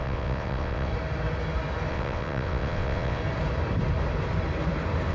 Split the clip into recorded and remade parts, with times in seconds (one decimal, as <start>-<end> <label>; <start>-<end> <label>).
0.0-0.9 remade; 0.9-1.9 recorded; 1.9-3.2 remade; 3.2-5.1 recorded